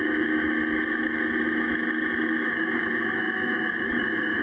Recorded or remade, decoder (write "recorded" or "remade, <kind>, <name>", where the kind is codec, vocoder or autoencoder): remade, autoencoder, DAC-VAE